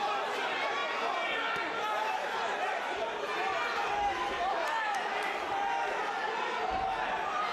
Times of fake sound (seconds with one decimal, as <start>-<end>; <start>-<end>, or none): none